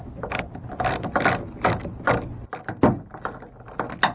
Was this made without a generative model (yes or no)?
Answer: yes